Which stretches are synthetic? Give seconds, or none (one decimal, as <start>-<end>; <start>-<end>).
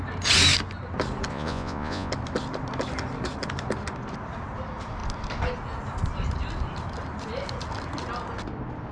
1.3-2.1